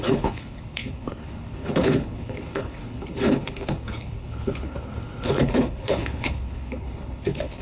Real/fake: fake